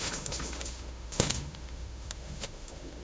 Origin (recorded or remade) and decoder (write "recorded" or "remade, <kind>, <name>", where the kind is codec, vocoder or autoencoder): remade, autoencoder, DAC-VAE